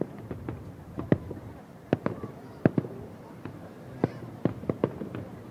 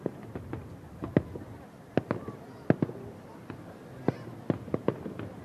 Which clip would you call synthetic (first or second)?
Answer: first